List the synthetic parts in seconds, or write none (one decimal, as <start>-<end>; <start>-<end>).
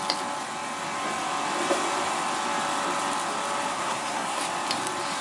3.7-4.4